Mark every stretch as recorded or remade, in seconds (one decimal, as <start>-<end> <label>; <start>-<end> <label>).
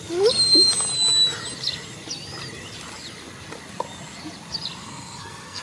0.0-4.8 recorded; 4.8-5.6 remade